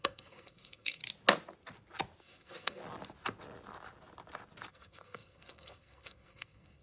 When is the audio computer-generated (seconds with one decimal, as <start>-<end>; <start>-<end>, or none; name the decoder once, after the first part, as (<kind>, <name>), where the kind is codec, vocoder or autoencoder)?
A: 0.0-1.0 (codec, SNAC); 2.2-2.8; 4.7-6.8